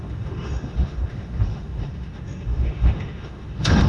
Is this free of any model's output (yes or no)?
no